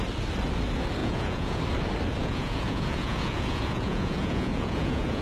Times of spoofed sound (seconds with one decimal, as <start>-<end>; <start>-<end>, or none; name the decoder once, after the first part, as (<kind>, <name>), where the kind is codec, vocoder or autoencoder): 1.0-1.6 (vocoder, Vocos); 2.2-5.2